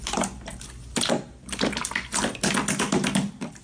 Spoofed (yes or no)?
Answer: no